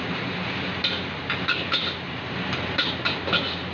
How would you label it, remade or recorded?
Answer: recorded